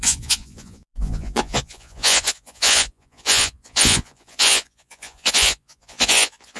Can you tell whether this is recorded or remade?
remade